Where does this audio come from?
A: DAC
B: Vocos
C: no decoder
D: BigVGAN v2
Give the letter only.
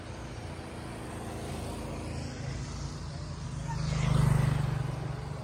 C